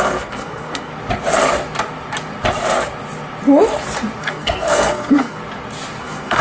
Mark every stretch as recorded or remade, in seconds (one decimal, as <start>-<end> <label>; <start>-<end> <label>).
0.0-0.9 remade; 0.9-4.2 recorded; 4.2-5.4 remade; 5.4-6.0 recorded; 6.0-6.4 remade